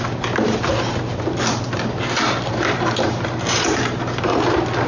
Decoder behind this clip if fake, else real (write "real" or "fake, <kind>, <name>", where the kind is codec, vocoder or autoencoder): real